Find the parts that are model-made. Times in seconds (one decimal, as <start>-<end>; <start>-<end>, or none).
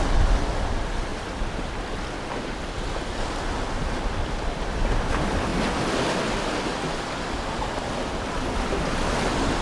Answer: none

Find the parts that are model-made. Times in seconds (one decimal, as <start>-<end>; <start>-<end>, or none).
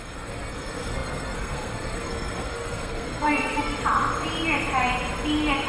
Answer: 0.0-3.8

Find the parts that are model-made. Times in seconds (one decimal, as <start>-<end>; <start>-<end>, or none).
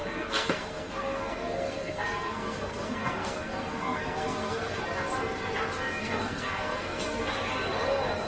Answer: 0.0-4.8; 6.0-7.3